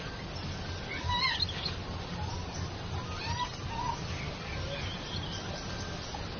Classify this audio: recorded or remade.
recorded